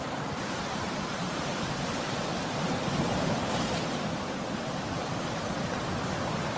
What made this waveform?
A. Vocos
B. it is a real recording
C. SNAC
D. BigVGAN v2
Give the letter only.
D